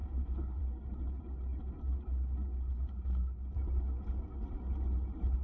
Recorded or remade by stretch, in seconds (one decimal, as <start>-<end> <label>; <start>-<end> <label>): 0.0-0.6 remade; 0.6-5.4 recorded

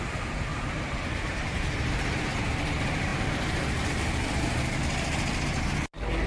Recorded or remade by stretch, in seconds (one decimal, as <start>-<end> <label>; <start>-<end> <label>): 0.0-0.5 recorded; 0.5-2.5 remade; 2.5-3.1 recorded; 3.1-4.8 remade; 4.8-6.3 recorded

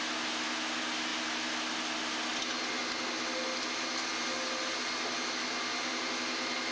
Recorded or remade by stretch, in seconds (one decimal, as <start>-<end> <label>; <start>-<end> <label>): 0.0-6.7 recorded

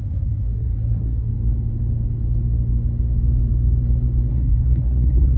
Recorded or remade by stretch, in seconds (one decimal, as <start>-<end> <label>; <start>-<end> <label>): 0.0-1.3 remade; 1.3-4.3 recorded; 4.3-5.4 remade

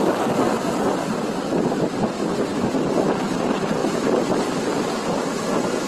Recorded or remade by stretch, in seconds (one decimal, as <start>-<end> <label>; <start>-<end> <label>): 0.0-5.9 recorded

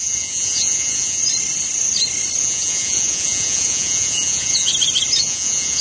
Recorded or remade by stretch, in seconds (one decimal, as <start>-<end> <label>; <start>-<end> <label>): 0.0-1.2 remade; 1.2-2.4 recorded; 2.4-4.7 remade; 4.7-5.2 recorded; 5.2-5.8 remade

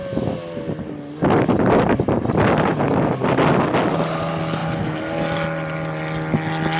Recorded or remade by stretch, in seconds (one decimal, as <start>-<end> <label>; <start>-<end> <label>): 0.0-6.8 recorded

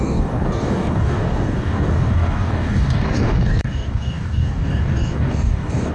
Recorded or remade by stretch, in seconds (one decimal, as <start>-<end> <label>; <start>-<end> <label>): 0.0-5.9 remade